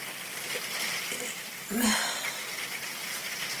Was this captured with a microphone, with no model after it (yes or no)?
yes